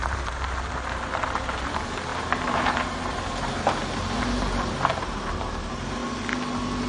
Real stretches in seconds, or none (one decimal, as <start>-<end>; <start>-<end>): 6.0-6.9